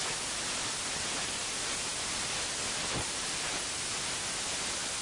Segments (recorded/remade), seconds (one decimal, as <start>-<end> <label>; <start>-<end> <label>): 0.0-5.0 recorded